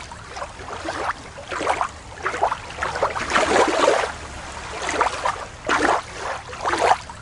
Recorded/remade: recorded